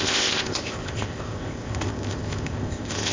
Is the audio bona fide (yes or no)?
no